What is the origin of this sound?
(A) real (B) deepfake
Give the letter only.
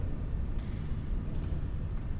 B